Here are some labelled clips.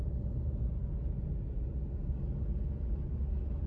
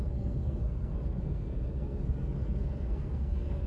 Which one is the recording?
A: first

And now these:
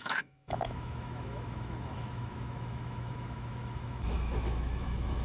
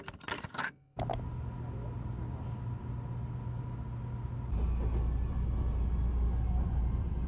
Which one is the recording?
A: second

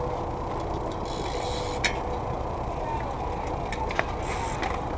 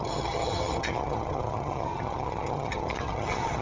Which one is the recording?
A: first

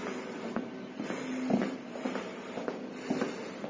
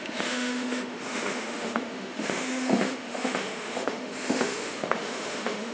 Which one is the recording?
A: first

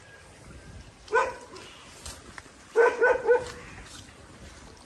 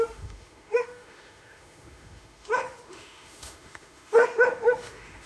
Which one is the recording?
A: first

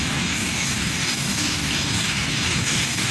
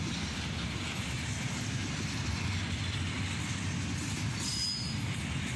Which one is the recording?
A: second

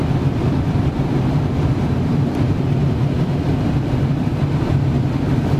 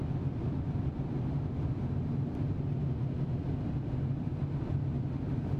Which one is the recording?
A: second